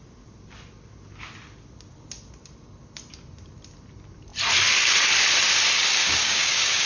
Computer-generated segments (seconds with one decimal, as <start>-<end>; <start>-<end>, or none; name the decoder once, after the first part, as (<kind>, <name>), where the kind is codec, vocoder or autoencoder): 6.0-6.9 (codec, DAC)